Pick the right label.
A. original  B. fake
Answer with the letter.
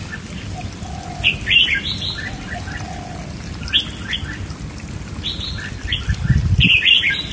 A